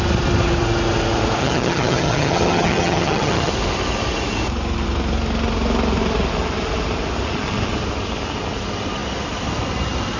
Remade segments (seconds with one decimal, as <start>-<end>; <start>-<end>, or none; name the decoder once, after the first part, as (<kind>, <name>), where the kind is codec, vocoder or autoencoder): 1.4-3.5 (vocoder, HiFi-GAN)

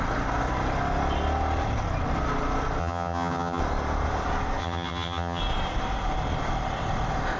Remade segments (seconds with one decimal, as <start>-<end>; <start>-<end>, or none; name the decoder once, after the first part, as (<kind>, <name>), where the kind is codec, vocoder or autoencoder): 2.8-3.6 (vocoder, HiFi-GAN); 4.6-5.4

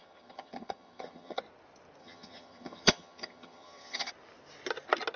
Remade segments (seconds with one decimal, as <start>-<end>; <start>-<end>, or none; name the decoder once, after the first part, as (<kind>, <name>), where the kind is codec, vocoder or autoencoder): 0.0-1.4 (vocoder, HiFi-GAN); 2.0-4.1